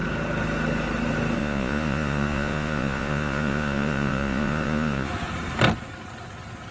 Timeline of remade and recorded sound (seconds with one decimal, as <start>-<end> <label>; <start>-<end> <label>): 0.0-1.4 recorded; 1.4-5.1 remade; 5.1-6.7 recorded